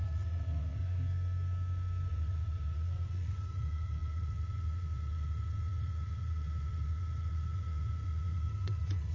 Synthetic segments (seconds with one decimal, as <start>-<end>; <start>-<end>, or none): 0.0-0.8; 2.1-9.1